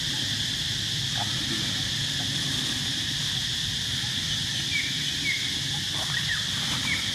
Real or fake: real